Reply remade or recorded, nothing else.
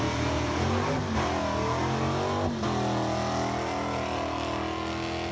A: recorded